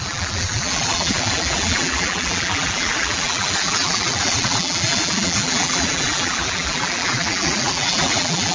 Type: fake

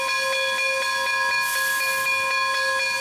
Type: real